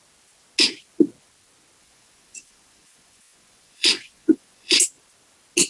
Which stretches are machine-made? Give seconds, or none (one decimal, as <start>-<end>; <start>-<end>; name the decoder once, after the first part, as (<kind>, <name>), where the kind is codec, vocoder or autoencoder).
1.8-4.8 (vocoder, Vocos)